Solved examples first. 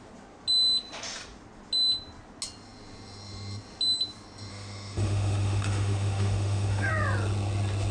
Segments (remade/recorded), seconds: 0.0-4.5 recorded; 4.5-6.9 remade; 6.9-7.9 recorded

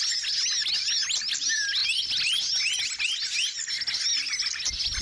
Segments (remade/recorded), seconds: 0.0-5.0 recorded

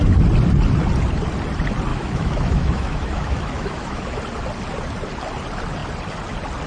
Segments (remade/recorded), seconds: 0.0-1.9 recorded; 1.9-4.2 remade; 4.2-6.7 recorded